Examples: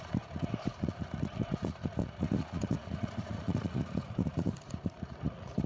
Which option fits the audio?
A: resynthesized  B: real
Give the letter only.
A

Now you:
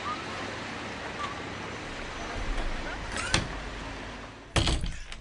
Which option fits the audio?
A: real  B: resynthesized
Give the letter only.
A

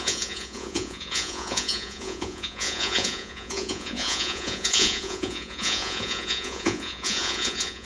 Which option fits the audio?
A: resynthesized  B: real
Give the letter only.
A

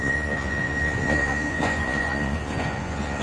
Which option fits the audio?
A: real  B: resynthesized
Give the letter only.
B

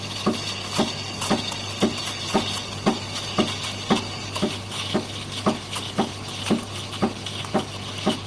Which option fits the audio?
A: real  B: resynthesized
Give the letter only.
A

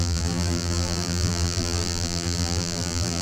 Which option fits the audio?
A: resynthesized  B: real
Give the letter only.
A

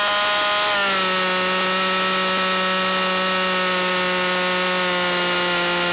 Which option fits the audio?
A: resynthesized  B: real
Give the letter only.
B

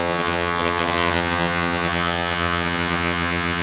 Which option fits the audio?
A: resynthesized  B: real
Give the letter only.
A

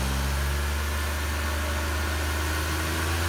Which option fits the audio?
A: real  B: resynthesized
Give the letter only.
A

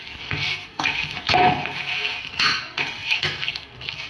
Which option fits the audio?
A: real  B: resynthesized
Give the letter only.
B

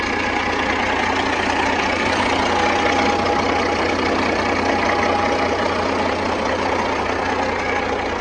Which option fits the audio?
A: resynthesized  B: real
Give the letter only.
B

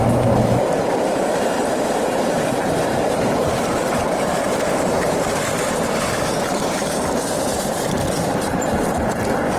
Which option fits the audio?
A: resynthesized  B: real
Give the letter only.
A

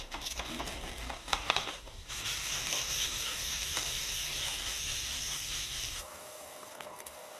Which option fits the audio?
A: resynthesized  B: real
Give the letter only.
A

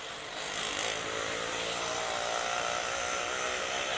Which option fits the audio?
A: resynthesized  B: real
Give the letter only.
B